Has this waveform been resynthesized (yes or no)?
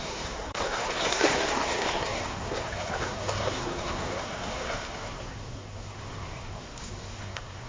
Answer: yes